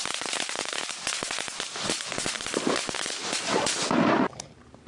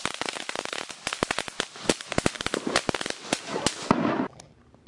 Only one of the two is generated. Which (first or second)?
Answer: first